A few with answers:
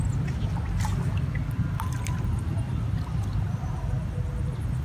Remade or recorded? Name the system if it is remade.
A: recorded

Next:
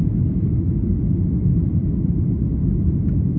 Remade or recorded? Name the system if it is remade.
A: recorded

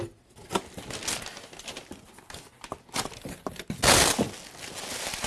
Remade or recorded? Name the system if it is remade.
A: recorded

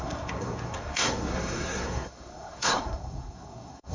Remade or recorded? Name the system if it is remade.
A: remade, codec, SNAC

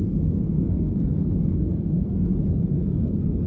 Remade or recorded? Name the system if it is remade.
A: remade, codec, SNAC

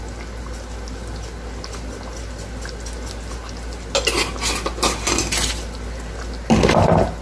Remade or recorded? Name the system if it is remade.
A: recorded